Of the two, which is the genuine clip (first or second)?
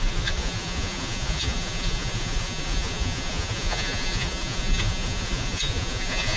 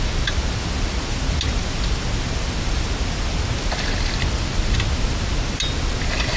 second